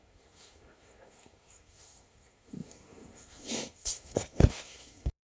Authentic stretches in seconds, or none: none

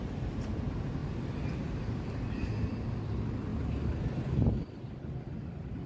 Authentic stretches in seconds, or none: 0.0-5.9